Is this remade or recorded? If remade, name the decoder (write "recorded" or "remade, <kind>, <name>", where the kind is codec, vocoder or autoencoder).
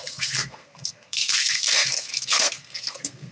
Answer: remade, codec, SNAC